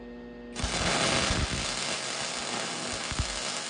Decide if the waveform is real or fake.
real